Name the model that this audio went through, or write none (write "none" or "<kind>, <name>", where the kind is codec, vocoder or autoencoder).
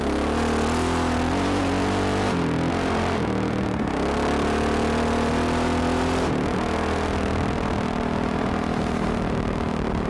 none